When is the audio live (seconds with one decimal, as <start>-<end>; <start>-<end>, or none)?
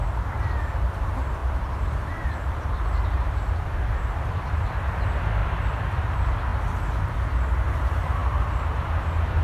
0.0-1.4; 4.7-9.4